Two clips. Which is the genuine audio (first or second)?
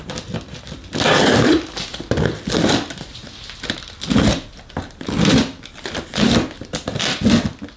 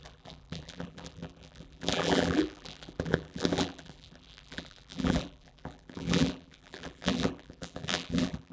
first